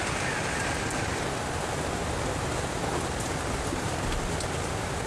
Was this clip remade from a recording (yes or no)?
no